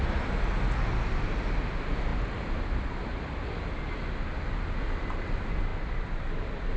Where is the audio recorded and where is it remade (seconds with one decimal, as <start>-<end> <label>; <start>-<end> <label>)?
0.0-6.8 recorded